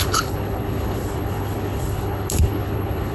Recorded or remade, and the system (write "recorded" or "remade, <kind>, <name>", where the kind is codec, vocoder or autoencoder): remade, codec, HILCodec